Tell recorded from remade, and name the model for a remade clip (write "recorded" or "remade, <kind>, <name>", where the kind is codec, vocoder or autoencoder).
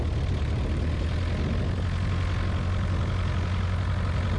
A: recorded